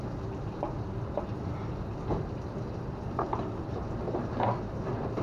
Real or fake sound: fake